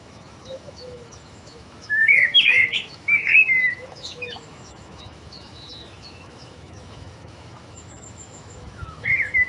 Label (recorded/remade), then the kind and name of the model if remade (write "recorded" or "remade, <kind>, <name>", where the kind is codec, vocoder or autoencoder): remade, autoencoder, DAC-VAE